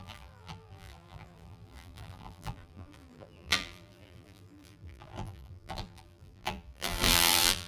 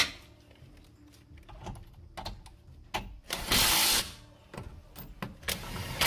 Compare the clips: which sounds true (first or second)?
second